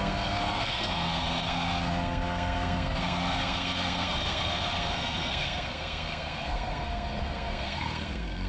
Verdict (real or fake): fake